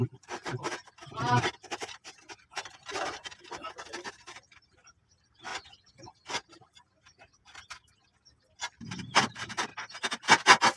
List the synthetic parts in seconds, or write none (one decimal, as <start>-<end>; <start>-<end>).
0.0-5.5; 6.3-7.3; 8.7-9.7